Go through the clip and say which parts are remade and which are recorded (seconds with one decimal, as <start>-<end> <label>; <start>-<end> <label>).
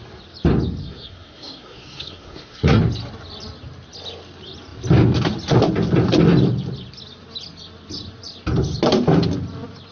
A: 0.0-0.8 recorded; 0.8-2.8 remade; 2.8-9.9 recorded